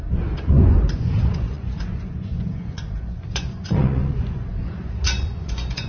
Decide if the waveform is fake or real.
fake